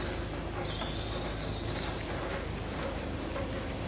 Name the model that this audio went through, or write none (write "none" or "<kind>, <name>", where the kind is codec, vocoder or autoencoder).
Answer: none